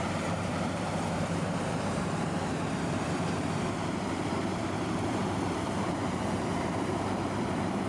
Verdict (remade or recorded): remade